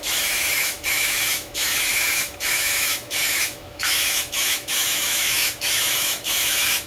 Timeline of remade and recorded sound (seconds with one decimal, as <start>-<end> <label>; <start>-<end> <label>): 0.0-6.9 remade